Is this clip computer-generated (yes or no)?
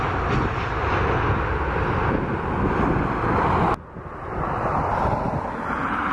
no